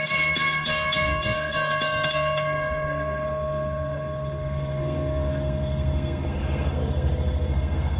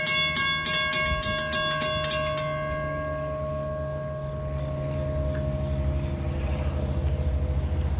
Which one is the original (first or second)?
second